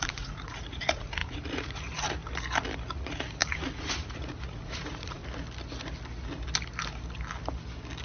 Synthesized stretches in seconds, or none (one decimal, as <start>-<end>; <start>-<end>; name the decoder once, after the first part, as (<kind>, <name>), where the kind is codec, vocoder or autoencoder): 0.0-2.2 (vocoder, Vocos); 2.8-5.2